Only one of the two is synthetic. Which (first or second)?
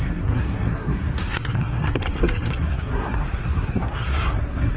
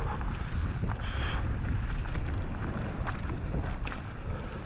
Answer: first